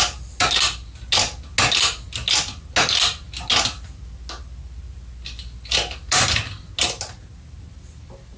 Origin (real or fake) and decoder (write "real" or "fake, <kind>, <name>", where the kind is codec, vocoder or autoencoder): real